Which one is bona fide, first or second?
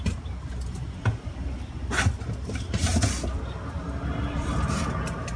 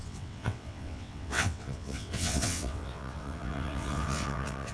first